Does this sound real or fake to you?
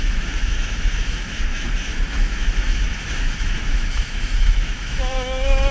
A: fake